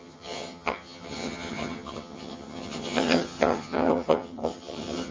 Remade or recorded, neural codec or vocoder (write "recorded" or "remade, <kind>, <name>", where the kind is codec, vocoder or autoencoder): remade, vocoder, HiFi-GAN